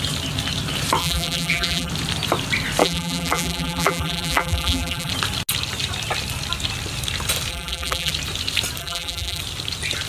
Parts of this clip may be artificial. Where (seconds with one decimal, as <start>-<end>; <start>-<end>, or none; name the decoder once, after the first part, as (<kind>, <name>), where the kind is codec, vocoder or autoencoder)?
1.0-1.9 (vocoder, BigVGAN v2); 2.8-5.1; 7.5-8.1; 8.8-9.4